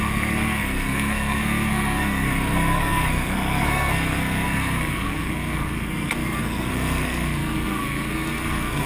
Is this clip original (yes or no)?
no